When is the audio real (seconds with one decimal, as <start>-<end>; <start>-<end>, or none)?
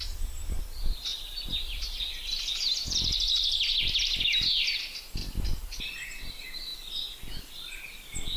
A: 0.0-1.1; 3.0-5.2; 5.9-8.4